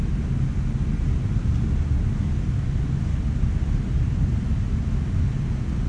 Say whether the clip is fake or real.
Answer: real